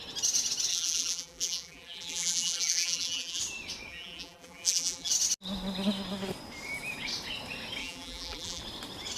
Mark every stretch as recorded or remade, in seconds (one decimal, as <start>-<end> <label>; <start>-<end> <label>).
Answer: 0.0-0.7 recorded; 0.7-3.4 remade; 3.4-3.9 recorded; 3.9-5.1 remade; 5.1-7.8 recorded; 7.8-8.6 remade; 8.6-9.2 recorded